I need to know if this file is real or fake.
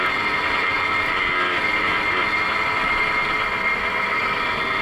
real